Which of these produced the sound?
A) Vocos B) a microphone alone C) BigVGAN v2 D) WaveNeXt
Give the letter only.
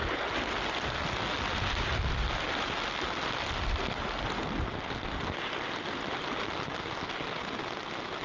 B